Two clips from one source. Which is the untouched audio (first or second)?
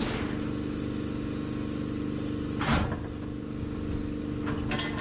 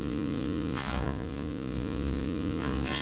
first